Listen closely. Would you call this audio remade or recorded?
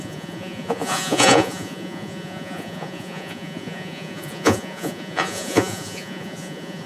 remade